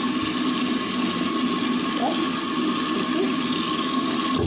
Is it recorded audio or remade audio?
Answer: recorded